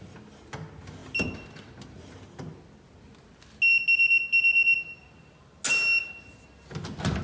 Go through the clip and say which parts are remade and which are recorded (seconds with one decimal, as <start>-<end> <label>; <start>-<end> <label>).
0.0-7.2 recorded